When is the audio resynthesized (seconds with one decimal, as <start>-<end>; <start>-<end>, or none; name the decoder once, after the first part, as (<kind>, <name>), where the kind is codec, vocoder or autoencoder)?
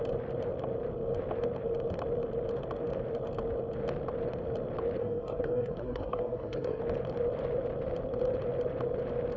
5.0-6.8 (codec, SNAC)